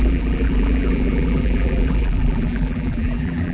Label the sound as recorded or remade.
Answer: remade